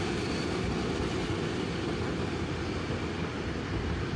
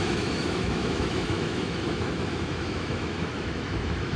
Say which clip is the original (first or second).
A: first